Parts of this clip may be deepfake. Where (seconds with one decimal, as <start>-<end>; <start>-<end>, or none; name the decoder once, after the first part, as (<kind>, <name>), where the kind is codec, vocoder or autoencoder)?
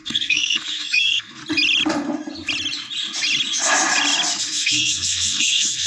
0.0-1.4 (codec, SNAC); 4.4-5.9